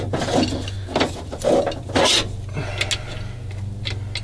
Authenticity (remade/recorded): recorded